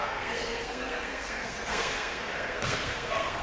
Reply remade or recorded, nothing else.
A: remade